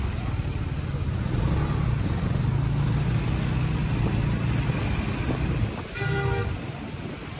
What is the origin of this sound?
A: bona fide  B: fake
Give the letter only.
A